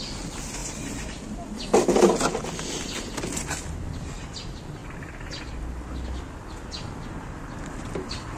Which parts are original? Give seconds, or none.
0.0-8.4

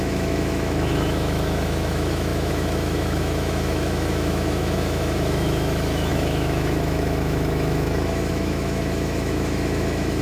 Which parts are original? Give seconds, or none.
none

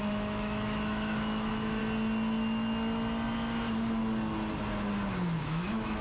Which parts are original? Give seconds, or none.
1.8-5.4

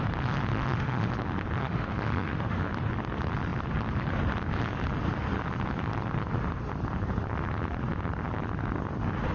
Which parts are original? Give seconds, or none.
0.0-0.5; 1.1-1.6; 2.7-9.3

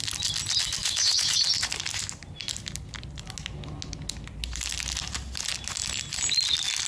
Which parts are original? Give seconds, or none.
0.0-0.8; 1.4-6.9